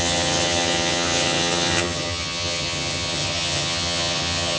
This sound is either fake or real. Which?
fake